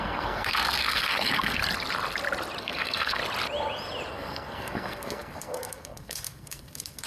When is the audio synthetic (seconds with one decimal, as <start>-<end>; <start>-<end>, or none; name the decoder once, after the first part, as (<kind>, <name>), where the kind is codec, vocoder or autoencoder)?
0.0-1.6 (codec, SNAC); 2.6-3.2; 4.1-7.1